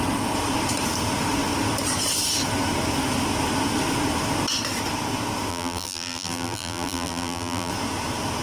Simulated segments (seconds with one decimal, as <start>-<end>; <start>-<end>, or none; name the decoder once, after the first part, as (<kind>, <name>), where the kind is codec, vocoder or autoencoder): 5.5-7.7 (vocoder, BigVGAN v2)